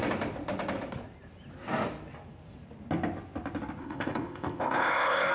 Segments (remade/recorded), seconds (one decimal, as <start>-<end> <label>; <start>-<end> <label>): 0.0-3.8 recorded; 3.8-5.3 remade